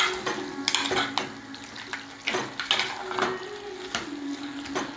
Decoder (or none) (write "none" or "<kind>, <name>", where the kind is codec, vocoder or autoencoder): none